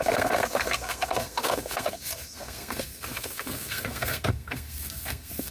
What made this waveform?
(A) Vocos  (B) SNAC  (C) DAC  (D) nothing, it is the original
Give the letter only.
B